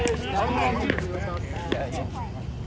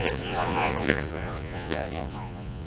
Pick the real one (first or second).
first